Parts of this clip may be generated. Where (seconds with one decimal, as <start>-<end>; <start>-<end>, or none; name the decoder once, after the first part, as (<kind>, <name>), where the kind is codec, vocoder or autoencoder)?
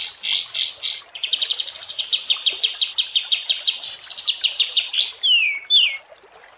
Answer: none